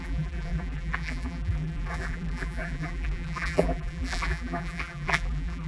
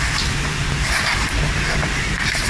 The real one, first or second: second